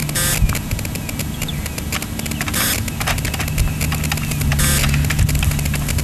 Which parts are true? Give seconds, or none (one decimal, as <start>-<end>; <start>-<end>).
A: 0.0-6.0